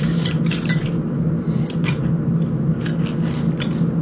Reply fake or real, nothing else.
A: real